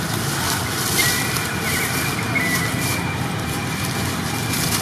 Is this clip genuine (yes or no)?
yes